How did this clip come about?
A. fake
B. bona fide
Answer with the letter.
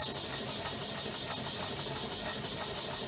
B